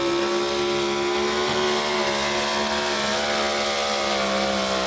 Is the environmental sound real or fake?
real